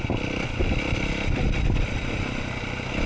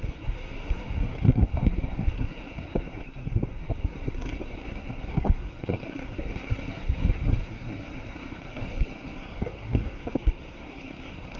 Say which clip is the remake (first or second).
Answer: second